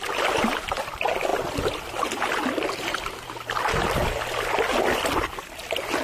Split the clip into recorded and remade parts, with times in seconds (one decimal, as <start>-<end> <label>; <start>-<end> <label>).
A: 0.0-6.0 recorded